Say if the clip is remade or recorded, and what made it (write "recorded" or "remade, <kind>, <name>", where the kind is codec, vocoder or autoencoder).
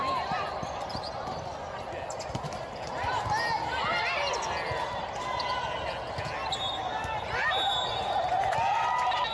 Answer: recorded